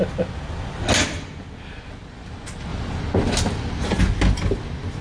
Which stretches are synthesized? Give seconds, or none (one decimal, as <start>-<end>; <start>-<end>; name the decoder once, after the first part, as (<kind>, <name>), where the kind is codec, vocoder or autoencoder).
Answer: none